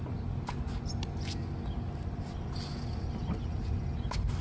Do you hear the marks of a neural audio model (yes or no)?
no